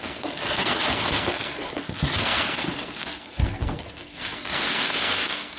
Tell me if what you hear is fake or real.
fake